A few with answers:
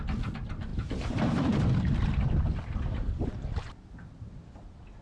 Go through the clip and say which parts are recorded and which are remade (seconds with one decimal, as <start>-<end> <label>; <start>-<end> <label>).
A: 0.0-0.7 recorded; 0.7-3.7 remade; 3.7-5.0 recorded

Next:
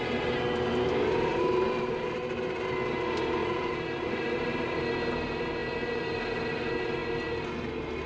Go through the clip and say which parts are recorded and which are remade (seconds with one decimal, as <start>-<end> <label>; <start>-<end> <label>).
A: 0.0-1.3 recorded; 1.3-1.9 remade; 1.9-3.4 recorded; 3.4-4.8 remade; 4.8-5.6 recorded; 5.6-6.2 remade; 6.2-8.1 recorded

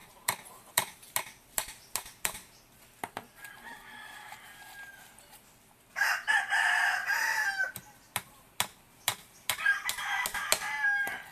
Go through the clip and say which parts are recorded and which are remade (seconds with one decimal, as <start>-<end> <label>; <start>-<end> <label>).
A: 0.0-1.1 remade; 1.1-7.0 recorded; 7.0-7.7 remade; 7.7-11.3 recorded

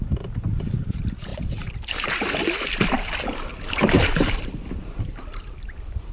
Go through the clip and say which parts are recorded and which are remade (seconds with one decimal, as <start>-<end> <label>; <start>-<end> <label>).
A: 0.0-1.3 recorded; 1.3-5.0 remade; 5.0-6.1 recorded